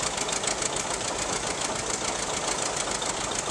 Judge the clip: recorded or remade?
recorded